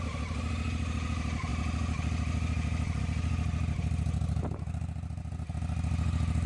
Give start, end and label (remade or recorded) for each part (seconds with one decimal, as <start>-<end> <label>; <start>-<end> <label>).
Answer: 0.0-6.5 recorded